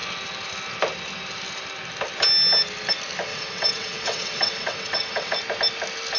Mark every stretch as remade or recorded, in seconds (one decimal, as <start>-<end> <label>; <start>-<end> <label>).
0.0-3.3 recorded; 3.3-5.4 remade; 5.4-6.2 recorded